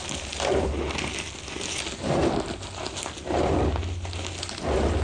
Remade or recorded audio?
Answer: recorded